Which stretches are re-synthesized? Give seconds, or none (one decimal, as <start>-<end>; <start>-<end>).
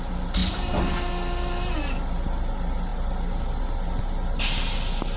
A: 0.4-0.9